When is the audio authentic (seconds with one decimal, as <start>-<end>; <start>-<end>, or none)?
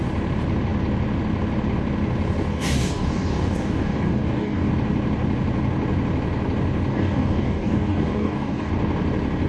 0.0-2.5; 4.7-6.9; 8.7-9.5